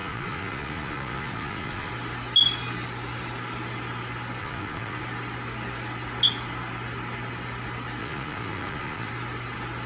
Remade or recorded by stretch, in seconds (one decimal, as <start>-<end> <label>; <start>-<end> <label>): 0.0-1.9 remade; 1.9-4.4 recorded; 4.4-5.0 remade; 5.0-8.0 recorded; 8.0-9.1 remade; 9.1-9.9 recorded